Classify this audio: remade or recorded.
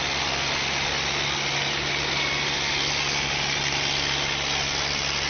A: recorded